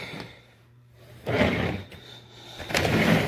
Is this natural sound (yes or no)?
no